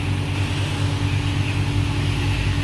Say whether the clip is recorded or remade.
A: recorded